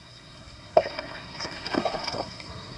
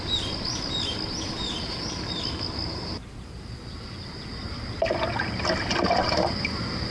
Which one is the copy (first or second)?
first